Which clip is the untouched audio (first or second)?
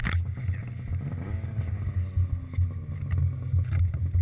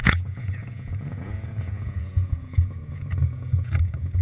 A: first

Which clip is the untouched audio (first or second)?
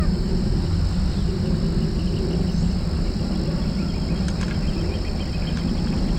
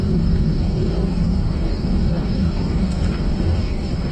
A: first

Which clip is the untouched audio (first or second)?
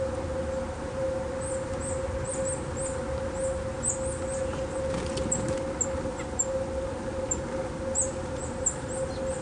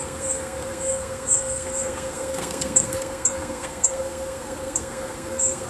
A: first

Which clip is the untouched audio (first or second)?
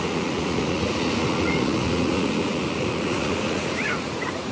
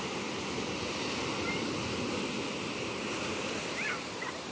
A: second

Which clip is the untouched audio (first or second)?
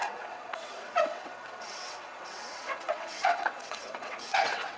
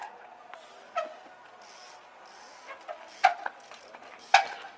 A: second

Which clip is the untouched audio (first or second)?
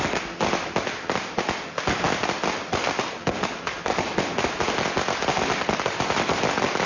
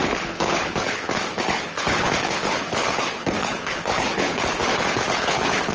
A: first